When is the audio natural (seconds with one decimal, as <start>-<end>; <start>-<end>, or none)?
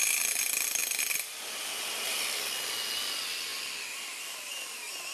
0.0-0.8; 2.4-5.1